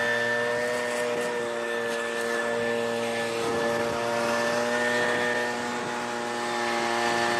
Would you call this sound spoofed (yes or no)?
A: no